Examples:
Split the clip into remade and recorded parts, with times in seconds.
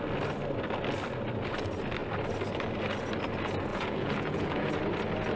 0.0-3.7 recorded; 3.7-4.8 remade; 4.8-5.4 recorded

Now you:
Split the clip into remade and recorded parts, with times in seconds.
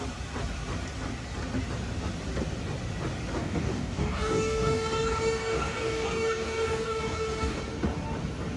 0.0-3.4 recorded; 3.4-7.6 remade; 7.6-8.6 recorded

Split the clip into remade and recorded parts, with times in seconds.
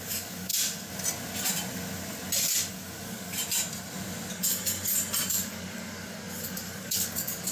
0.0-0.5 remade; 0.5-2.7 recorded; 2.7-3.4 remade; 3.4-5.3 recorded; 5.3-7.5 remade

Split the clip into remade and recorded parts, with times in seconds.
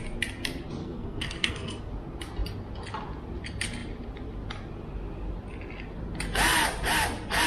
0.0-0.8 recorded; 0.8-1.9 remade; 1.9-7.5 recorded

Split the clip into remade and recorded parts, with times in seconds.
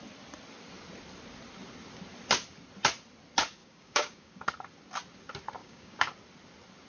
0.0-3.6 recorded; 3.6-4.4 remade; 4.4-5.6 recorded; 5.6-6.1 remade; 6.1-6.9 recorded